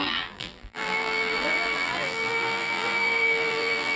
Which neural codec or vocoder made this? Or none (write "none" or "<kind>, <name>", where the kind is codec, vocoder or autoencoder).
vocoder, BigVGAN v2